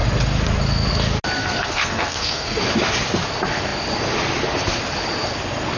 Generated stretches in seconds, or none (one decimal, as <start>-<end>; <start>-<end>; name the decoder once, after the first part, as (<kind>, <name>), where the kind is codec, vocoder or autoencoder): 1.4-2.6 (codec, SNAC)